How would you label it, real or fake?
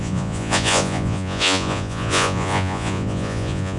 fake